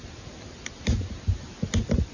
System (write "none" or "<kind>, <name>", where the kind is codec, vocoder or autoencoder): none